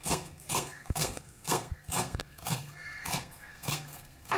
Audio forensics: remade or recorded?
remade